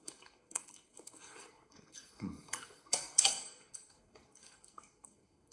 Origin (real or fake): fake